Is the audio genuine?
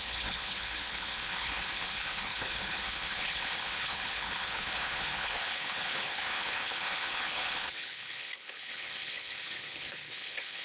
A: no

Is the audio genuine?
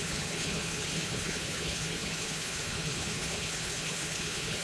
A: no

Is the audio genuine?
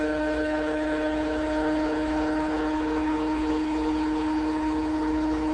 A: no